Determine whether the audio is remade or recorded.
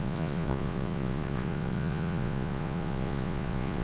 remade